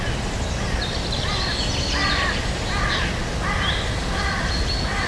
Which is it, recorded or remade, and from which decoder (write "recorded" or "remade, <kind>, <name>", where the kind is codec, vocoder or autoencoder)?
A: recorded